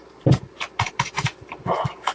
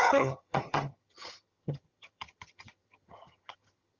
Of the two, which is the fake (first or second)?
second